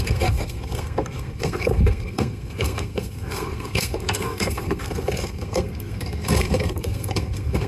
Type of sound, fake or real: fake